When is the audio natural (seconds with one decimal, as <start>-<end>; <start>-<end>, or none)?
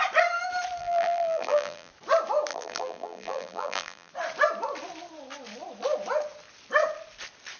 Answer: 0.0-0.8; 1.9-2.5; 4.1-7.6